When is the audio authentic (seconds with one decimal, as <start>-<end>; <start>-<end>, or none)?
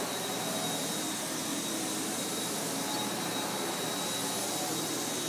0.0-1.5; 3.9-5.3